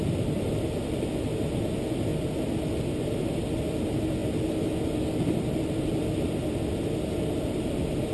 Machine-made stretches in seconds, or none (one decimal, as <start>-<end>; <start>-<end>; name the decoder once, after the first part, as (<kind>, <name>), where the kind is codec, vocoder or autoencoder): none